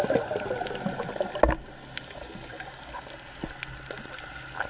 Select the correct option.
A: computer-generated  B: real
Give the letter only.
B